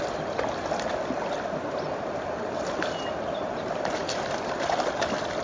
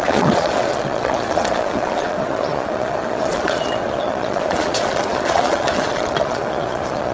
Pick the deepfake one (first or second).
second